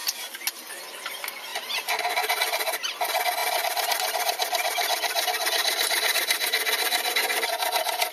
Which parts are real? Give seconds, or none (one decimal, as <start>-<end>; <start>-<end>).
0.0-3.4; 7.5-8.1